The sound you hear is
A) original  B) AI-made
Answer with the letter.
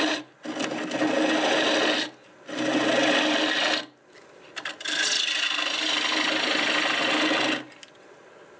A